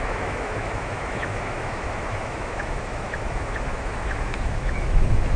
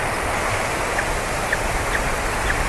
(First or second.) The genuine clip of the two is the second